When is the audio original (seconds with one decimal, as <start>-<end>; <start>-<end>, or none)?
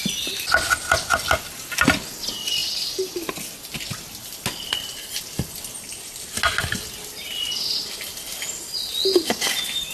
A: 0.0-9.9